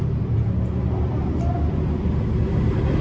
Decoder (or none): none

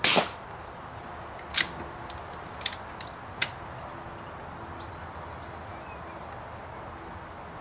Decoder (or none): none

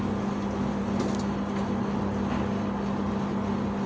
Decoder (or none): none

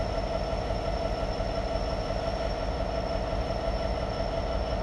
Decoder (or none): none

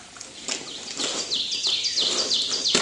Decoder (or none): none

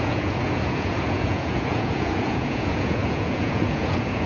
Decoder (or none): vocoder, Vocos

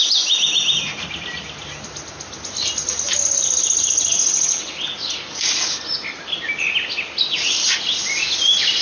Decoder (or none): none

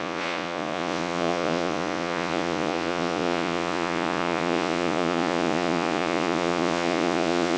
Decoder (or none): vocoder, Vocos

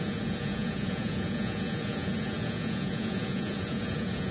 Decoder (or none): vocoder, Vocos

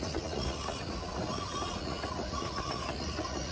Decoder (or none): vocoder, Vocos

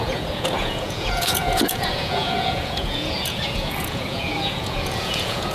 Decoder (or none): vocoder, Vocos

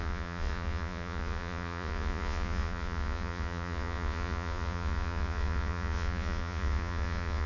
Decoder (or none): vocoder, Vocos